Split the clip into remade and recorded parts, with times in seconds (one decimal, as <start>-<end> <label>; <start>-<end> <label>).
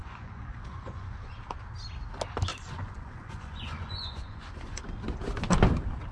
0.0-1.3 remade; 1.3-2.5 recorded; 2.5-4.8 remade; 4.8-6.1 recorded